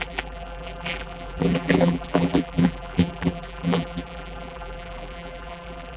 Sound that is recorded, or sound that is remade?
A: remade